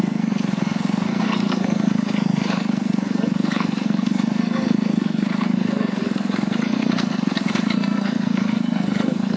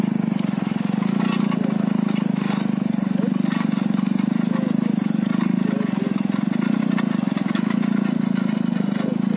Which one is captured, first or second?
second